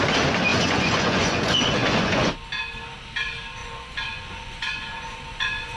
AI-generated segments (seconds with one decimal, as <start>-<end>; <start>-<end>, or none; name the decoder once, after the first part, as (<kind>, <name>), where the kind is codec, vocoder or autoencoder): 0.5-2.3 (vocoder, Vocos); 3.6-5.8

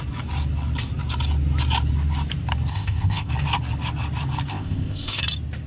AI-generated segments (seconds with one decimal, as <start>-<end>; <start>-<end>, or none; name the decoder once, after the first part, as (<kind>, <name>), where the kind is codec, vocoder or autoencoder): 2.7-3.3 (codec, ZipCodec); 4.5-5.2

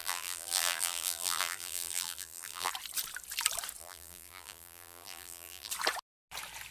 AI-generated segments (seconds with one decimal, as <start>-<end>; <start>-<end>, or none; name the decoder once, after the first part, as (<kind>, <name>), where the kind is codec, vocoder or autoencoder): 0.0-2.7 (vocoder, BigVGAN v2); 3.8-5.7

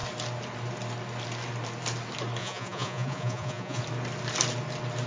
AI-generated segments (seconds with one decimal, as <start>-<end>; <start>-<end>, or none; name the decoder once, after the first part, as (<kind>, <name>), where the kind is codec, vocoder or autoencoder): 2.4-3.8 (vocoder, Vocos)

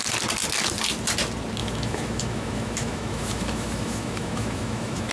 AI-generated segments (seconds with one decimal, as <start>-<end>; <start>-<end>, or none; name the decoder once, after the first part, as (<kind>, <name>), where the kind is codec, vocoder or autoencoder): 1.6-5.1 (autoencoder, DAC-VAE)

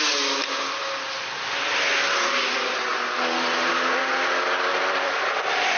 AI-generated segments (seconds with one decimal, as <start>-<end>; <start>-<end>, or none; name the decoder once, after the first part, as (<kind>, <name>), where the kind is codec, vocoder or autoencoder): 4.7-5.8 (vocoder, BigVGAN v2)

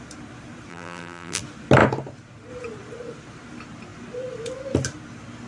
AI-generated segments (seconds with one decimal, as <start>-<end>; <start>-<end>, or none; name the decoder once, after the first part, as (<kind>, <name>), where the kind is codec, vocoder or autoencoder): 0.7-1.4 (vocoder, BigVGAN v2)